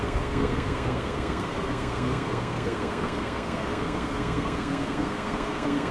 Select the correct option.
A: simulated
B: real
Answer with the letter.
A